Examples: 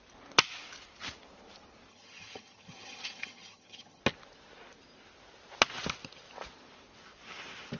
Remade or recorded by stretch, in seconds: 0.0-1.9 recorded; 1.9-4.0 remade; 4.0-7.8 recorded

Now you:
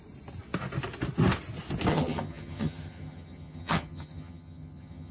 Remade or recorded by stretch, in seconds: 0.0-1.9 recorded; 1.9-5.1 remade

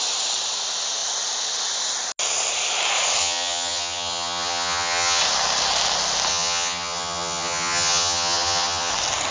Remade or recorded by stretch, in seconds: 0.0-3.2 recorded; 3.2-5.2 remade; 5.2-6.3 recorded; 6.3-8.9 remade; 8.9-9.3 recorded

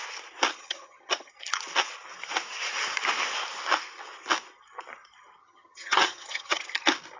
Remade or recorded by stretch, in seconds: 0.0-0.5 recorded; 0.5-1.3 remade; 1.3-5.4 recorded; 5.4-6.6 remade; 6.6-7.2 recorded

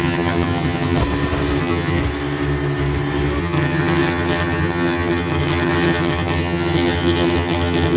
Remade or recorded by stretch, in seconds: 0.0-1.0 remade; 1.0-1.6 recorded; 1.6-2.0 remade; 2.0-3.4 recorded; 3.4-8.0 remade